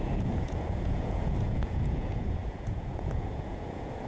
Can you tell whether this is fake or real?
fake